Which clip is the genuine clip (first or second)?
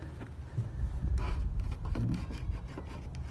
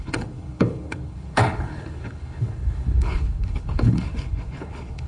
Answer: first